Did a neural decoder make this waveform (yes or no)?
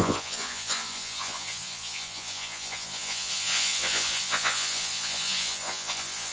yes